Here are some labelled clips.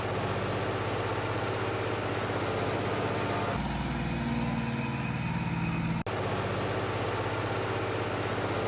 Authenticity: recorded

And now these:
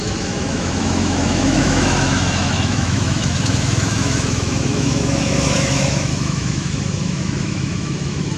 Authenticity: remade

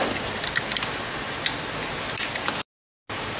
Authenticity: recorded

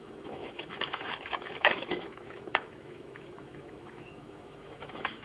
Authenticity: remade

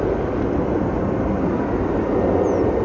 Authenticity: recorded